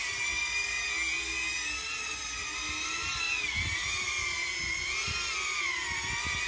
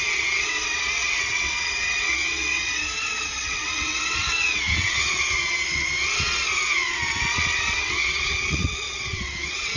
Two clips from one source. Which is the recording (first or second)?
first